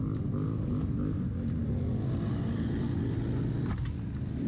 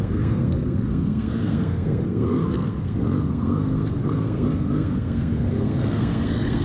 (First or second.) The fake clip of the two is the second